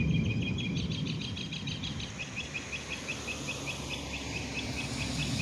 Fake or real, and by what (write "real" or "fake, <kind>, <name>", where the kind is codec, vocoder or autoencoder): real